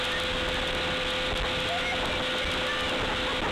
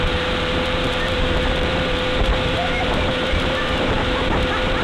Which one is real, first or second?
first